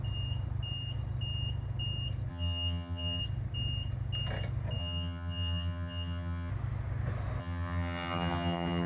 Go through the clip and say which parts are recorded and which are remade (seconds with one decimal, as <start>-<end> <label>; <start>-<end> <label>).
0.0-2.3 recorded; 2.3-3.2 remade; 3.2-4.8 recorded; 4.8-6.5 remade; 6.5-7.4 recorded; 7.4-8.9 remade